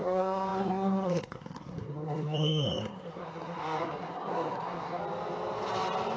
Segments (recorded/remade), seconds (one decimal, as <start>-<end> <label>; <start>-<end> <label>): 0.0-5.0 remade; 5.0-6.2 recorded